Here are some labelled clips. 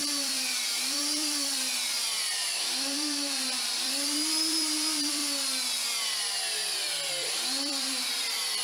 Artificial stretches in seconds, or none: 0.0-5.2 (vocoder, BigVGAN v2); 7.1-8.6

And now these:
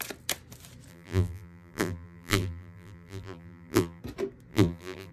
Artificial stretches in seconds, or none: 0.9-4.0 (vocoder, BigVGAN v2); 4.5-5.1

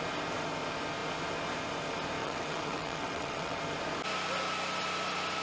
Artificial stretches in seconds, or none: 2.2-3.6 (vocoder, WaveNeXt)

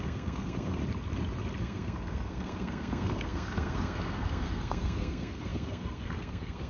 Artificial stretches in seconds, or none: 0.0-0.8 (codec, SNAC); 1.6-6.7

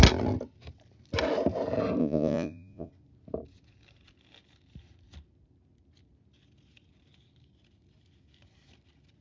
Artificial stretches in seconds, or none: 2.0-2.9 (vocoder, Vocos)